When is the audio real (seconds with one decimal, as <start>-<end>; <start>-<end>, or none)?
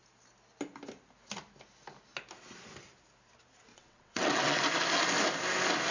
0.0-3.7; 4.6-5.9